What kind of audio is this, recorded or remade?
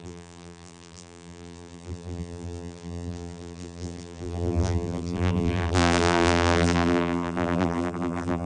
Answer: remade